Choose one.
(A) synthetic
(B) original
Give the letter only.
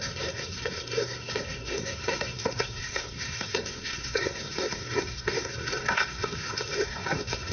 A